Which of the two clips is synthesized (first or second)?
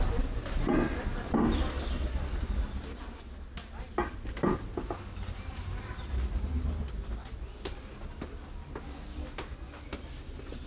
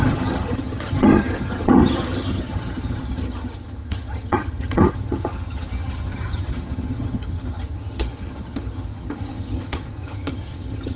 second